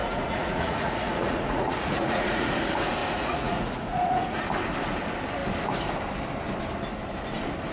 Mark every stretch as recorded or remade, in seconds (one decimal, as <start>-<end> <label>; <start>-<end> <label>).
0.0-2.5 remade; 2.5-3.0 recorded; 3.0-4.4 remade; 4.4-7.7 recorded